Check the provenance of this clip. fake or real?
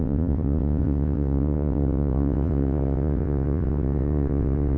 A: fake